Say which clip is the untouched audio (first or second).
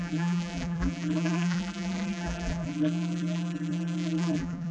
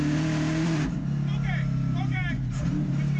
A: second